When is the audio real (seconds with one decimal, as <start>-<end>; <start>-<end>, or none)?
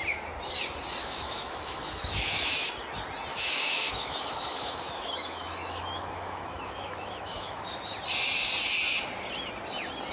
0.0-1.0; 2.7-3.3; 7.8-10.1